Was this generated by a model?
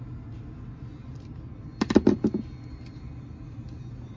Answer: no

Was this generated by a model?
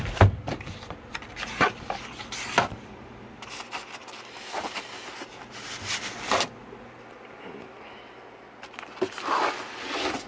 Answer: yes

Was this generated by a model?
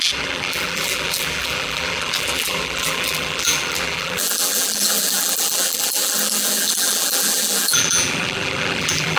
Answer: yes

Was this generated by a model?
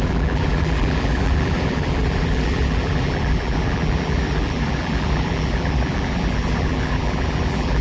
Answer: yes